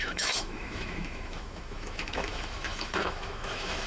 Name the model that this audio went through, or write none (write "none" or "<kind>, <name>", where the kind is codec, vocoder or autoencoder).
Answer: autoencoder, DAC-VAE